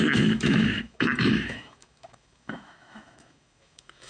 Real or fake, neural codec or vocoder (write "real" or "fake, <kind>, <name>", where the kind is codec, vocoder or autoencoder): fake, autoencoder, DAC-VAE